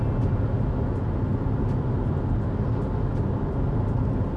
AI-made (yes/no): no